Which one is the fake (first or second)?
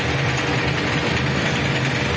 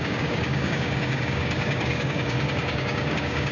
second